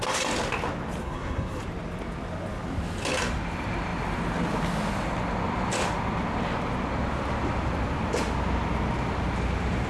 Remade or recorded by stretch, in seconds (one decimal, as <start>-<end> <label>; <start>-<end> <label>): 0.0-1.0 recorded; 1.0-1.6 remade; 1.6-9.9 recorded

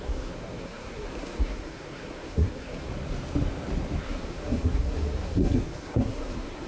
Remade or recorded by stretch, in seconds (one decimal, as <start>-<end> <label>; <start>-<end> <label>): 0.0-2.9 remade; 2.9-4.0 recorded; 4.0-6.7 remade

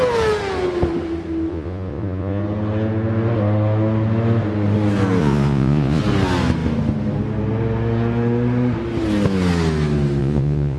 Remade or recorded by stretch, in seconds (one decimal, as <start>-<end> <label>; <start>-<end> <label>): 0.0-1.5 recorded; 1.5-2.4 remade; 2.4-5.2 recorded; 5.2-6.0 remade; 6.0-10.2 recorded; 10.2-10.8 remade

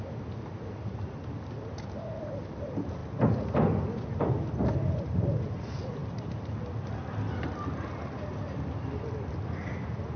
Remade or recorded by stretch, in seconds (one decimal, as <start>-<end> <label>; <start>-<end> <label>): 0.0-3.0 remade; 3.0-5.0 recorded; 5.0-6.0 remade; 6.0-8.9 recorded; 8.9-10.2 remade

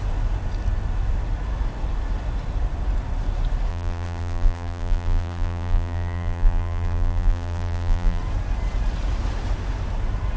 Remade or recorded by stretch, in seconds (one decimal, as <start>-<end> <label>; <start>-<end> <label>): 0.0-3.7 recorded; 3.7-8.2 remade; 8.2-10.4 recorded

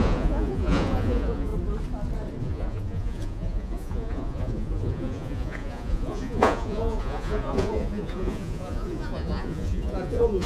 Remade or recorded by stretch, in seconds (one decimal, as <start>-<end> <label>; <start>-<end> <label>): 0.0-1.5 remade; 1.5-2.4 recorded; 2.4-10.5 remade

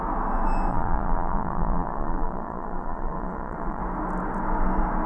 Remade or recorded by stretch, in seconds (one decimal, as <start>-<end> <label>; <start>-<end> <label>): 0.0-0.7 recorded; 0.7-3.8 remade; 3.8-5.1 recorded

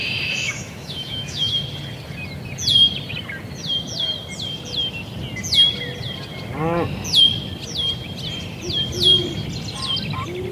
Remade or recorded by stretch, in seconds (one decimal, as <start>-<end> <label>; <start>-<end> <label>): 0.0-1.6 remade; 1.6-10.5 recorded